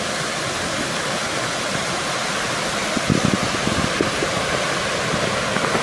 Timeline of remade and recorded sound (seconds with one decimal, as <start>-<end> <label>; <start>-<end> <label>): 0.0-5.8 recorded